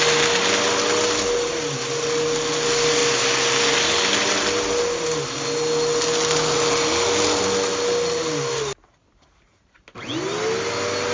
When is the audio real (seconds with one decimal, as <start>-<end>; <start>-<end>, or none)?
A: 0.0-11.1